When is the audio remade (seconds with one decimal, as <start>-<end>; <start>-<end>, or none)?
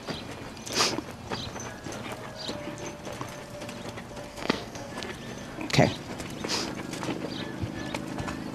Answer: 4.3-4.9